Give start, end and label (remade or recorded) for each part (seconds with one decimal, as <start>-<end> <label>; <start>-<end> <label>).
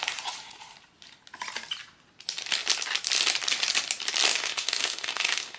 0.0-4.3 recorded; 4.3-5.6 remade